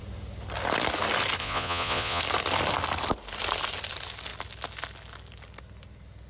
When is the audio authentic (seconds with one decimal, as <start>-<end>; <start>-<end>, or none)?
0.0-1.4; 2.2-6.3